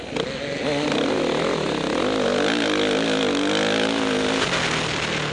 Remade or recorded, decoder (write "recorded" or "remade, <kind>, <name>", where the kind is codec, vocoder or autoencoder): recorded